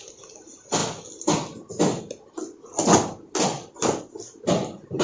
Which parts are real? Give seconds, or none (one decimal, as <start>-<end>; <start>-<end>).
0.0-5.0